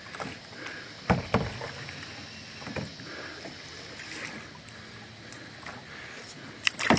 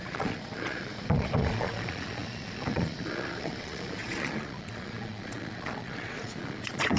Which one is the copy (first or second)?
second